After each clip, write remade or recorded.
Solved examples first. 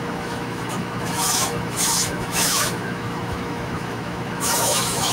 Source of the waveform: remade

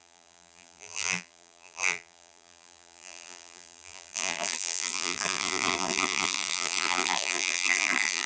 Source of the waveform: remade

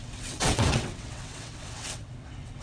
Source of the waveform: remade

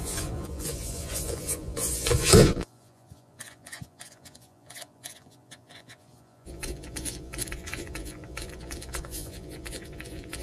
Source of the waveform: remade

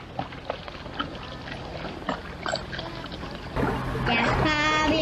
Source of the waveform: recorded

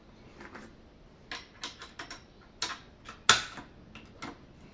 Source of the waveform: recorded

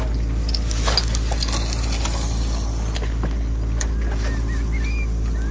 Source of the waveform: recorded